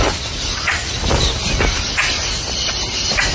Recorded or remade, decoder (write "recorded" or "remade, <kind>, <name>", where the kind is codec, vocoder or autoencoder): recorded